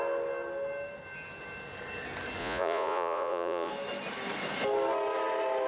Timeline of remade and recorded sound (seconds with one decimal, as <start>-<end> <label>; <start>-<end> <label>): 0.0-2.4 recorded; 2.4-3.7 remade; 3.7-5.7 recorded